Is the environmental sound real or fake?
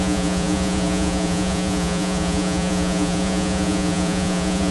fake